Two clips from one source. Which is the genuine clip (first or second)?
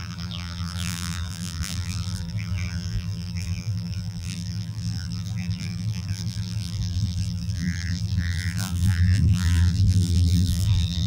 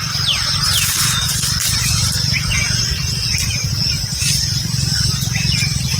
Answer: second